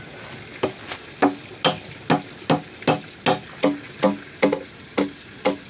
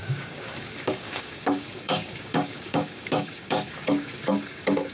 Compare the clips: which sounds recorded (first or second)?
first